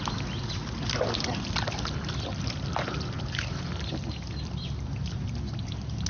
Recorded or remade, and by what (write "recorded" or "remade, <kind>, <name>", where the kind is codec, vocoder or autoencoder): recorded